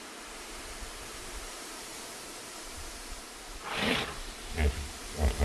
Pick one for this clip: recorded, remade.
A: remade